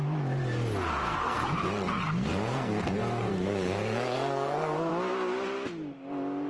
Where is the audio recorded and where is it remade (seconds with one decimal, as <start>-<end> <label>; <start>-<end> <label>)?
0.0-1.0 recorded; 1.0-4.9 remade; 4.9-6.5 recorded